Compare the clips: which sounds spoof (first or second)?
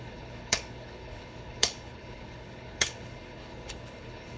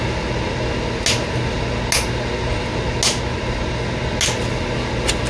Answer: first